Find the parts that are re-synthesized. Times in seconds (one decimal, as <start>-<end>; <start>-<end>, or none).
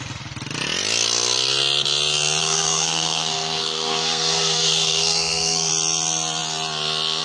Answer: 2.4-5.7